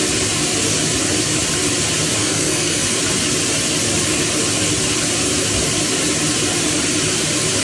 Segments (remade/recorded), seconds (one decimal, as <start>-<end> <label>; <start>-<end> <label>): 0.0-2.2 recorded; 2.2-3.0 remade; 3.0-7.6 recorded